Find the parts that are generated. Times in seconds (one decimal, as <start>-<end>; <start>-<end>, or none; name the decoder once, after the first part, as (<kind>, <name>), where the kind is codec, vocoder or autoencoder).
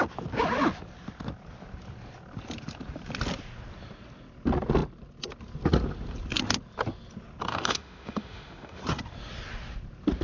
7.5-8.8 (autoencoder, DAC-VAE)